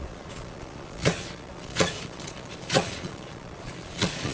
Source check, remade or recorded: remade